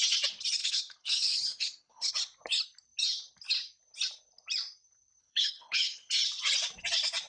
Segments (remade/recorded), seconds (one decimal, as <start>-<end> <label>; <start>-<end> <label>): 0.0-0.6 recorded; 0.6-2.1 remade; 2.1-5.2 recorded; 5.2-6.1 remade; 6.1-7.3 recorded